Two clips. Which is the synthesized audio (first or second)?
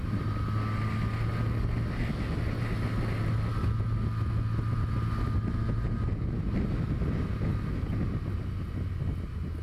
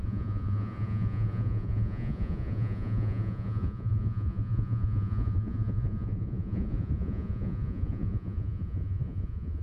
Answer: second